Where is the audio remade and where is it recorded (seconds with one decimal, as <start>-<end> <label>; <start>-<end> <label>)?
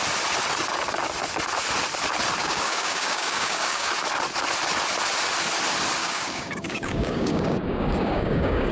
0.0-2.4 recorded; 2.4-3.9 remade; 3.9-6.0 recorded; 6.0-8.7 remade